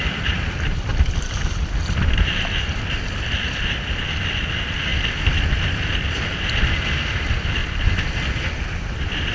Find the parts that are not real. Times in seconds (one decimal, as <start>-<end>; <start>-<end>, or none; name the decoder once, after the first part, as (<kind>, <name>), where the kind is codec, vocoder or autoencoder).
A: 0.0-0.9 (vocoder, BigVGAN v2); 2.6-4.9; 6.4-7.6; 8.7-9.3